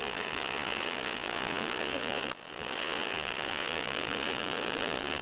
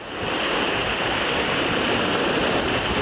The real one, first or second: second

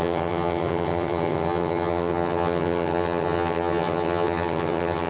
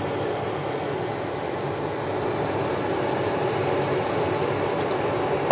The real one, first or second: second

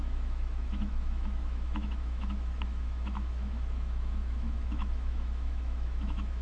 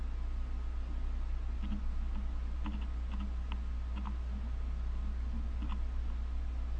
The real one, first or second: second